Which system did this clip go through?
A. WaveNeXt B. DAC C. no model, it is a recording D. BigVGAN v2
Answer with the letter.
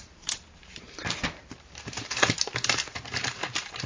D